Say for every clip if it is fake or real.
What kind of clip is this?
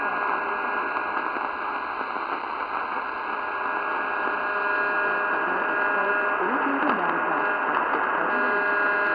real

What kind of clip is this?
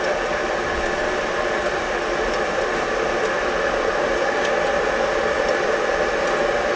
real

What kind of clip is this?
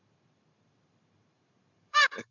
fake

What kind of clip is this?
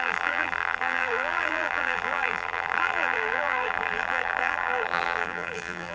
fake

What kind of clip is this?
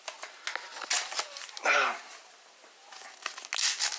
real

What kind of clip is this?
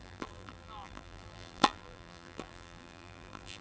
fake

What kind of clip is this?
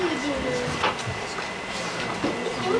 real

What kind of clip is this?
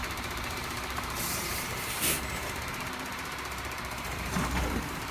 fake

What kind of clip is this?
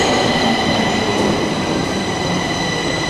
fake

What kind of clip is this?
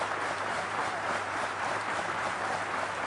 fake